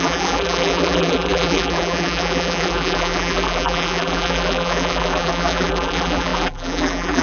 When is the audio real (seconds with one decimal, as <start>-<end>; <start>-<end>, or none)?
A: none